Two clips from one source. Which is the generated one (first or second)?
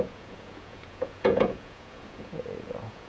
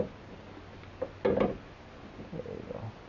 first